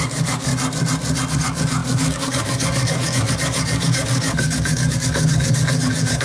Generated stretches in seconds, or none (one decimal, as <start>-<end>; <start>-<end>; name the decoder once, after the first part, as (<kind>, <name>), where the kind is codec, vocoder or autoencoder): 0.0-0.5 (codec, DAC); 1.3-6.2